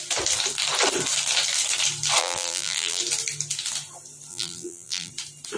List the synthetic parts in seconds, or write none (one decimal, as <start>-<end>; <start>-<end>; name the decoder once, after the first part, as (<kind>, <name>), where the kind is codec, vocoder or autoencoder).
2.2-3.0 (vocoder, BigVGAN v2); 4.3-5.1

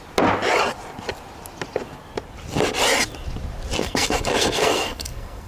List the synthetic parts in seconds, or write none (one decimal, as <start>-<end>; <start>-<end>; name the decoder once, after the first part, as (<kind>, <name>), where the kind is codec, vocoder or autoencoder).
3.8-5.5 (codec, SNAC)